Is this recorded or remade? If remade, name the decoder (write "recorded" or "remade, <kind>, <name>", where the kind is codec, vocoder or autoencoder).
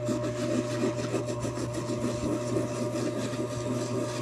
recorded